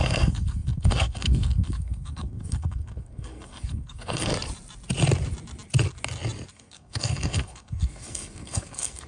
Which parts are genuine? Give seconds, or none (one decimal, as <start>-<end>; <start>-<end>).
4.3-6.5